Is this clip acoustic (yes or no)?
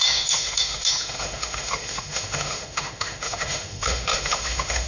no